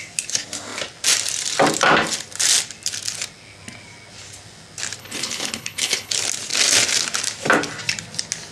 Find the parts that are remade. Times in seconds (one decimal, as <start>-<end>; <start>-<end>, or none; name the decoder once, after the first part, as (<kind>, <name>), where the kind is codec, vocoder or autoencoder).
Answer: 5.0-6.1 (codec, HILCodec)